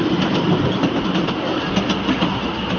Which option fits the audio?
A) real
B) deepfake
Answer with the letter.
A